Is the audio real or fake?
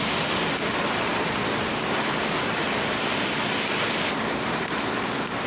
real